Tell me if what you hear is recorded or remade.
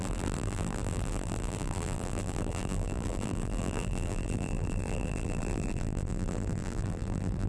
remade